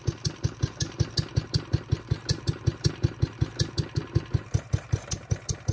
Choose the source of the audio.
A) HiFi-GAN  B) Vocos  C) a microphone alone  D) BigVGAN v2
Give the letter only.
C